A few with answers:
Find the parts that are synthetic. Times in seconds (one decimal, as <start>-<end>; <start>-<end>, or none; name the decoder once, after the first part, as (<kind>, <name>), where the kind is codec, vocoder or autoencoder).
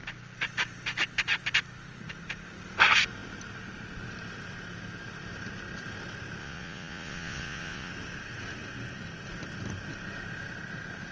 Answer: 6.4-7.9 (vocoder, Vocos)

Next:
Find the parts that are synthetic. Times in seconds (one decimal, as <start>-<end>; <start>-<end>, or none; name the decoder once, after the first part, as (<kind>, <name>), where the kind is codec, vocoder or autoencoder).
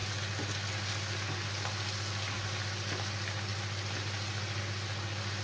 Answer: none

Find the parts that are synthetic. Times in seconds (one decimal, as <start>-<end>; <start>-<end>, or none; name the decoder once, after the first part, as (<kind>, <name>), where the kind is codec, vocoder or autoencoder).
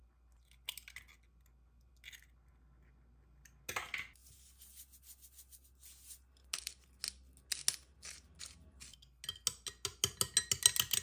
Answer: none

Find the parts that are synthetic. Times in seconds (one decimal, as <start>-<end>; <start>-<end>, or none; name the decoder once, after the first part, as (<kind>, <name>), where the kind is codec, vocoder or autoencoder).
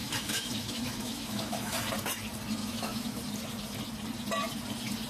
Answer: 0.0-1.8 (autoencoder, DAC-VAE); 2.6-3.2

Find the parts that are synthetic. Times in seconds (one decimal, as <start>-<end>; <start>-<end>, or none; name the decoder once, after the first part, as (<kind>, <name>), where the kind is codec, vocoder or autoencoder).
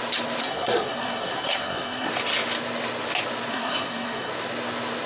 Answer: 0.4-2.1 (codec, SNAC); 3.5-4.3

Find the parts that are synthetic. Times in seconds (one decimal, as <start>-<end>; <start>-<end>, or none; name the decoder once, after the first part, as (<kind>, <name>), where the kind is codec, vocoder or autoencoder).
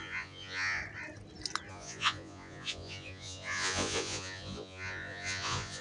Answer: 0.0-0.8 (vocoder, Vocos); 1.7-5.8